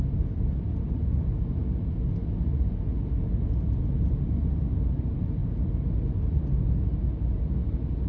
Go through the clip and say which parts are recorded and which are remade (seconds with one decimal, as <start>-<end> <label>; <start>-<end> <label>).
0.0-5.4 recorded; 5.4-6.1 remade; 6.1-8.1 recorded